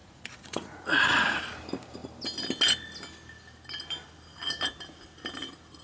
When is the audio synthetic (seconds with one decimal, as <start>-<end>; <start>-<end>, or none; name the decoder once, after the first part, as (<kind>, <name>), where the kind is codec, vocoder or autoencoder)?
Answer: 0.0-1.4 (vocoder, Vocos)